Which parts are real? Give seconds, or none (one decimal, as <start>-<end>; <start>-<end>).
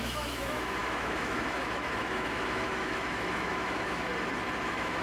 4.1-4.6